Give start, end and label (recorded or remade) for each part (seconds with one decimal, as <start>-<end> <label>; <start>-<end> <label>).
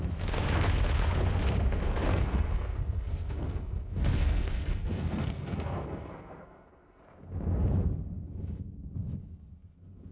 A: 0.0-2.1 recorded; 2.1-7.0 remade; 7.0-10.1 recorded